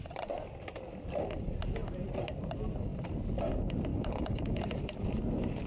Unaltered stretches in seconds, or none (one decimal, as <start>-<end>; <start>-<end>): 0.0-3.9; 4.6-5.7